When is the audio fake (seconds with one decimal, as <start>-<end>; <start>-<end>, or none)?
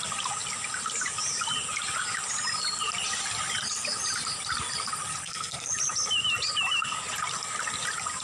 5.2-5.7